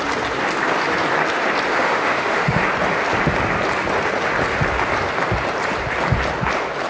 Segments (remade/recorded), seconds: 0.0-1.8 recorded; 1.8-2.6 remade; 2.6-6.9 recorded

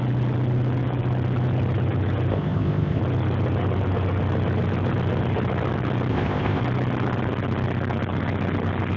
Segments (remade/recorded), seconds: 0.0-2.3 recorded; 2.3-3.0 remade; 3.0-6.1 recorded; 6.1-6.6 remade; 6.6-9.0 recorded

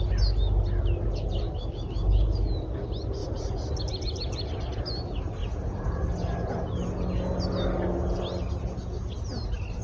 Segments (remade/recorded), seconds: 0.0-9.8 recorded